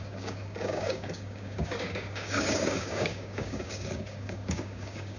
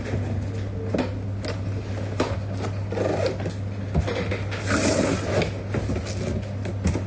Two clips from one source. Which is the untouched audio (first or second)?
second